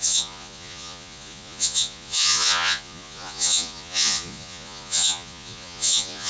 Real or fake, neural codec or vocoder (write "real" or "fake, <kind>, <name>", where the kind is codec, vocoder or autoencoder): fake, vocoder, Vocos